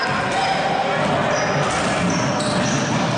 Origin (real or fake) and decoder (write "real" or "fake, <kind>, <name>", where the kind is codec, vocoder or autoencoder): real